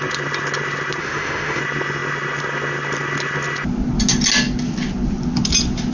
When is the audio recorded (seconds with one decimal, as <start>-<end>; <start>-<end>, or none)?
0.0-1.0; 1.6-5.9